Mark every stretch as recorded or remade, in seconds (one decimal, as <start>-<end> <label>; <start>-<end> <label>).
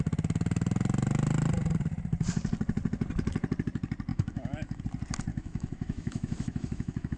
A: 0.0-4.1 recorded; 4.1-4.8 remade; 4.8-5.3 recorded; 5.3-7.2 remade